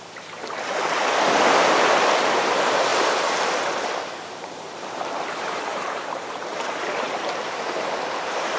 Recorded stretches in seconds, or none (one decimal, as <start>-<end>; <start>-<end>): 0.4-2.3; 2.9-4.1